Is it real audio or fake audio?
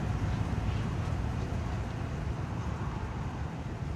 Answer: real